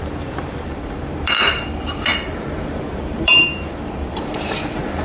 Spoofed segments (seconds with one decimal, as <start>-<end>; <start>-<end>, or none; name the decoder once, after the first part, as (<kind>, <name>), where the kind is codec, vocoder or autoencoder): 0.0-5.0 (vocoder, BigVGAN v2)